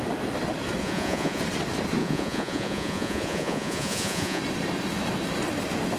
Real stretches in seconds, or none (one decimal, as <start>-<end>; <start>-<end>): 0.0-0.8; 1.4-2.0; 4.4-6.0